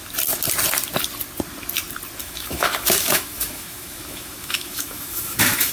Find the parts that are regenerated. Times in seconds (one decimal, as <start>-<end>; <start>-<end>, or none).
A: 2.2-5.7